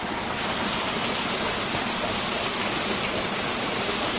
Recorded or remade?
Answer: recorded